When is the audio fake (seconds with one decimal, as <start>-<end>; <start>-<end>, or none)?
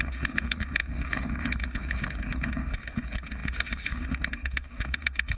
0.0-5.4